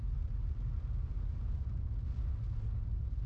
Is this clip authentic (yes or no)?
yes